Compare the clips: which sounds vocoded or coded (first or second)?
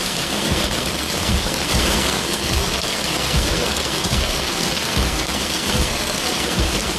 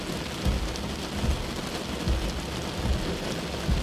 first